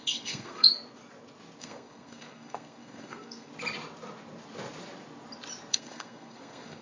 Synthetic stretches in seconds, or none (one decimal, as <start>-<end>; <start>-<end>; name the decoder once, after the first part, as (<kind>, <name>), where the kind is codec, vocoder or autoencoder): 0.0-0.7 (codec, SNAC); 1.6-3.5; 5.7-6.8